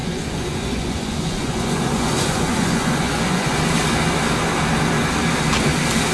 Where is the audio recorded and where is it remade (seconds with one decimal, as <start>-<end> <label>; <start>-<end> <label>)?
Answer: 0.0-3.6 remade; 3.6-6.1 recorded